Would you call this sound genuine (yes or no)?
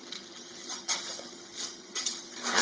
no